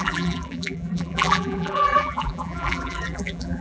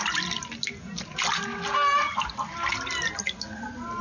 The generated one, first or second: first